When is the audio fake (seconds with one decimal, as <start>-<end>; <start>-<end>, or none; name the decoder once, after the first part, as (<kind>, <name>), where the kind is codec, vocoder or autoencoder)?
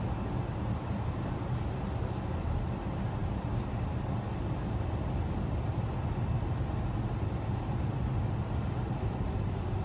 none